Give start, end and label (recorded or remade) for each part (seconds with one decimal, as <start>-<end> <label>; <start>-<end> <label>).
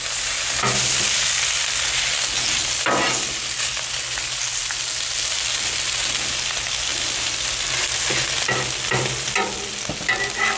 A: 0.0-10.6 recorded